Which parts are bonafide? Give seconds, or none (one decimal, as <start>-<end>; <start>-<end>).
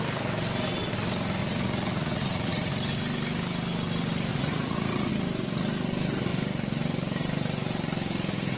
0.0-1.4; 2.7-4.3; 5.1-8.6